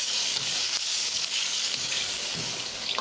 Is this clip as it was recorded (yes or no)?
no